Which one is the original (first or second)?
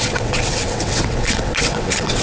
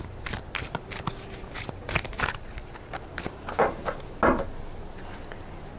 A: second